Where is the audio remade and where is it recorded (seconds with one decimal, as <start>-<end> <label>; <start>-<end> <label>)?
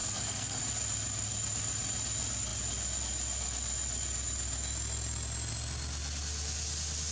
0.0-0.6 remade; 0.6-7.1 recorded